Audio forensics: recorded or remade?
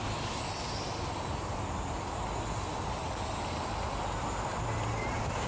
recorded